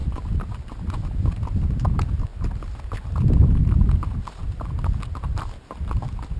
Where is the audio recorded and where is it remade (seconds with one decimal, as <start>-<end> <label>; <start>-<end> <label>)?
0.0-6.4 recorded